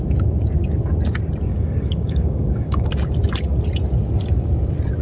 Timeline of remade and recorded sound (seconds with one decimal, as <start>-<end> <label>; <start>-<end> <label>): 0.0-1.5 recorded; 1.5-2.9 remade; 2.9-5.0 recorded